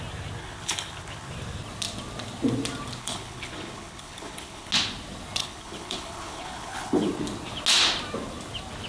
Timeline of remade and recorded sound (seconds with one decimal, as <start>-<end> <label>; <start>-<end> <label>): 0.0-0.4 recorded; 0.4-1.3 remade; 1.3-3.0 recorded; 3.0-4.7 remade; 4.7-5.4 recorded; 5.4-7.1 remade; 7.1-8.9 recorded